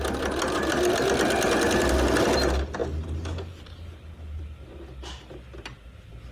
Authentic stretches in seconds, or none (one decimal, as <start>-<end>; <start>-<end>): 0.0-6.3